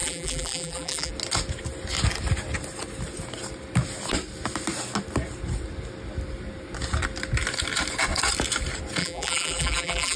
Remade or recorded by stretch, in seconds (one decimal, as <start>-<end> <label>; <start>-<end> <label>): 0.0-1.1 remade; 1.1-9.0 recorded; 9.0-10.2 remade